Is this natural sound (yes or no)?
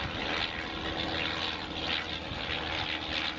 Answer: yes